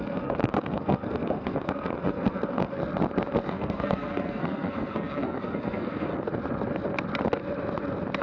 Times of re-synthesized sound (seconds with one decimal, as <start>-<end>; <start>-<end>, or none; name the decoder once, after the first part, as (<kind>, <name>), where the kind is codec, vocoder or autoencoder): 0.0-2.8 (codec, SNAC); 3.5-6.1